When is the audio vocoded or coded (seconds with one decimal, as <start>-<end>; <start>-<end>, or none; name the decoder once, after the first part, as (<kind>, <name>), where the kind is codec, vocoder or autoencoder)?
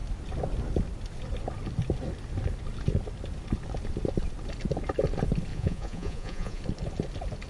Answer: 5.5-6.6 (vocoder, Vocos)